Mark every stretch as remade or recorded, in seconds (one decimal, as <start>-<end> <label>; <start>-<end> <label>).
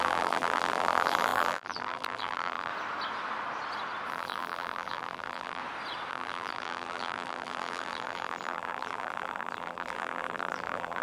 0.0-2.7 remade; 2.7-4.1 recorded; 4.1-5.6 remade; 5.6-6.1 recorded; 6.1-11.0 remade